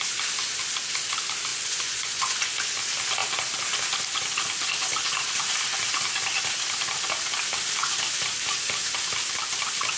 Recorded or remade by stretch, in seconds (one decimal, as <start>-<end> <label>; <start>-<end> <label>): 0.0-1.5 recorded; 1.5-2.5 remade; 2.5-10.0 recorded